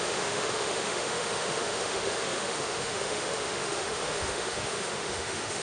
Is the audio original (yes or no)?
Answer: no